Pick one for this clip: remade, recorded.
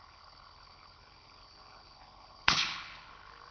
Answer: remade